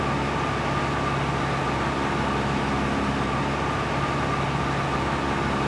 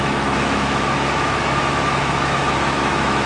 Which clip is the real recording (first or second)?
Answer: first